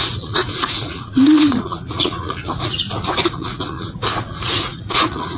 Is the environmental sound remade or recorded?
remade